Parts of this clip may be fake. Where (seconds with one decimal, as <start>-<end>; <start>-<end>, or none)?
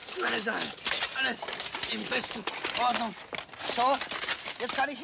0.0-0.8; 2.0-2.5